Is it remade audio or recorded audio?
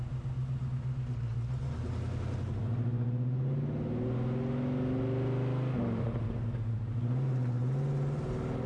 recorded